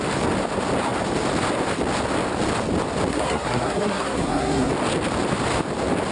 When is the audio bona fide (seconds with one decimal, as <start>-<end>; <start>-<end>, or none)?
0.0-3.1; 4.7-6.1